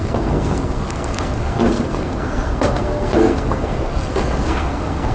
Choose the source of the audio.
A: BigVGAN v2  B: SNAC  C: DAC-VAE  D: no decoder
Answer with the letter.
B